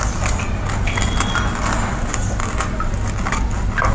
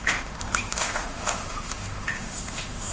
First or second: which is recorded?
first